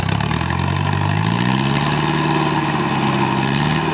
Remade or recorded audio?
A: recorded